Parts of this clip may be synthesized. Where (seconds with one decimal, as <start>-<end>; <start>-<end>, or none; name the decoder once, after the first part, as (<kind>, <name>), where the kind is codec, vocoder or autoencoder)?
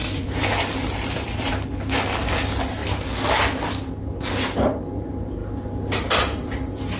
0.0-1.5 (vocoder, BigVGAN v2)